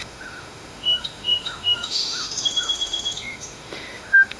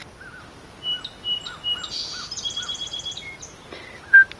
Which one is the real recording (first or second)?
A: second